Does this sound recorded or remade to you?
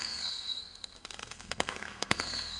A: remade